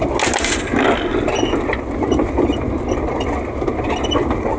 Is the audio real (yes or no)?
yes